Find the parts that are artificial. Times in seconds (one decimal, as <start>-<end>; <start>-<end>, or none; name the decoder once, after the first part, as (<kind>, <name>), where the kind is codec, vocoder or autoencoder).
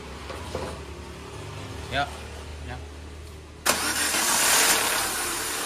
none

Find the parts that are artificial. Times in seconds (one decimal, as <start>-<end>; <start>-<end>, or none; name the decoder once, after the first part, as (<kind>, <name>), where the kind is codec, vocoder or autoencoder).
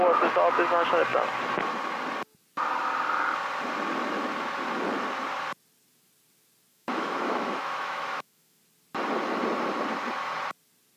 6.7-8.6 (autoencoder, DAC-VAE)